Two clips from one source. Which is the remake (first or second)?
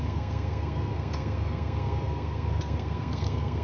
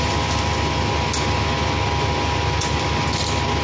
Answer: first